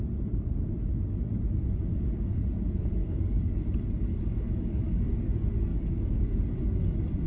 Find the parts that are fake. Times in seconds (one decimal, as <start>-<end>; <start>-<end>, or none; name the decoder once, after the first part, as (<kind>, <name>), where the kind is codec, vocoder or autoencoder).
1.9-2.4 (codec, DAC); 3.0-3.6; 4.1-5.1; 5.7-6.4

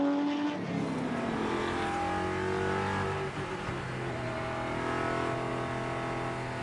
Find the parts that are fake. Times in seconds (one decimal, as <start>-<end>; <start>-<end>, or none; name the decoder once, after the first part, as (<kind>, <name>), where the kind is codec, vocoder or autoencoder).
none

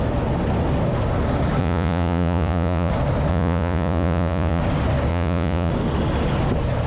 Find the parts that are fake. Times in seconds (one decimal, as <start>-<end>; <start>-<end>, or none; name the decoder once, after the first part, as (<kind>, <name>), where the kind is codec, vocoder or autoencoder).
1.6-2.9 (vocoder, Vocos); 3.3-4.6; 5.1-5.7

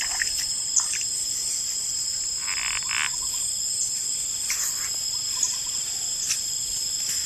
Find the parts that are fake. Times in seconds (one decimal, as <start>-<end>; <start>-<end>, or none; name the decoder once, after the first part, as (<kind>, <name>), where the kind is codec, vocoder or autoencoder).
none

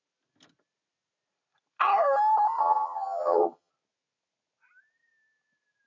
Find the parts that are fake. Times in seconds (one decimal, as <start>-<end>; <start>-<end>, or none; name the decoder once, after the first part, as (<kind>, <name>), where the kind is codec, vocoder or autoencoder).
2.6-3.7 (vocoder, HiFi-GAN)

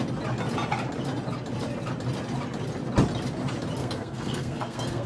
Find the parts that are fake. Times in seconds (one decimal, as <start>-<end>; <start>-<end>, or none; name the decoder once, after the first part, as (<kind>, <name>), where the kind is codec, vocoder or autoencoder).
3.8-5.1 (codec, SNAC)